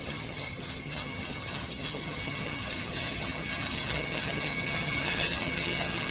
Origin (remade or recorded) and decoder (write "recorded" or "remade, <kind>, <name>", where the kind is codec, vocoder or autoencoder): remade, vocoder, HiFi-GAN